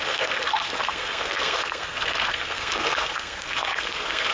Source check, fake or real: fake